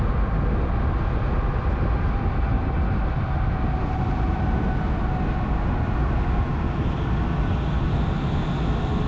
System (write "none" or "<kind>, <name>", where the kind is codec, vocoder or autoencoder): none